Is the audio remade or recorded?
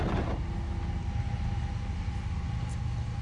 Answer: recorded